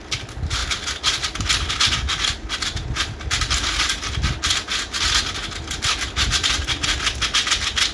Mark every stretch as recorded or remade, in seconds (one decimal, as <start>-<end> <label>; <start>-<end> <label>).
0.0-7.9 recorded